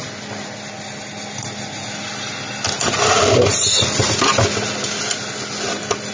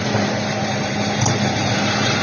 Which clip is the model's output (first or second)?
second